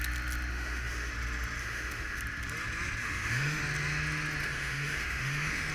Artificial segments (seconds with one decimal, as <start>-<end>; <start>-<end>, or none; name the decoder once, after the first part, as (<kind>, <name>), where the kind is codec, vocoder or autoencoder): 0.5-1.1 (autoencoder, DAC-VAE); 1.6-2.2; 3.0-3.6; 4.4-5.7